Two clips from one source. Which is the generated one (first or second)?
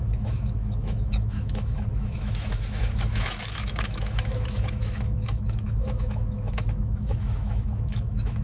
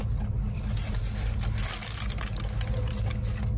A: first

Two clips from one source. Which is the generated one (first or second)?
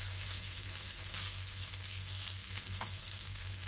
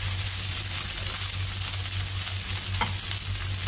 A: first